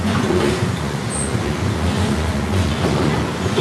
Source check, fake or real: fake